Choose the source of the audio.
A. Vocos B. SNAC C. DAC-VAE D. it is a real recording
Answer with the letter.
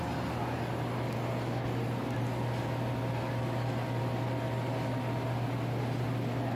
D